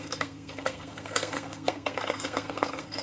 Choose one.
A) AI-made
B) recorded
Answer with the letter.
A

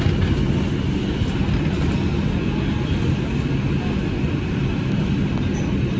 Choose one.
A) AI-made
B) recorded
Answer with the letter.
B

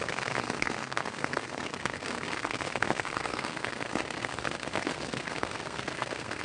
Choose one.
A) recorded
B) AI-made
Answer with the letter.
B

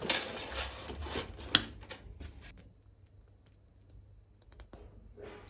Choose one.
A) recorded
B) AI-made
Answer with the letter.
A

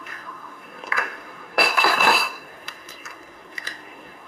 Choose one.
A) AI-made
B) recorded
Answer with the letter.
A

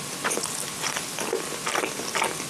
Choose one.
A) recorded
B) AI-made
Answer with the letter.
A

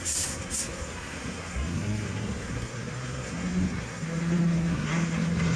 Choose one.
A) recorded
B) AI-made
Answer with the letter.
B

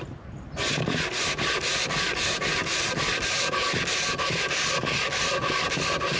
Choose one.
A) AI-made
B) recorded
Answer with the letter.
B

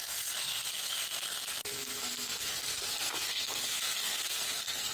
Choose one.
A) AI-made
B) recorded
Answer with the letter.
A